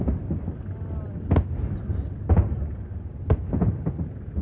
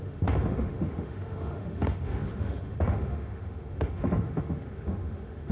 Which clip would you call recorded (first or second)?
first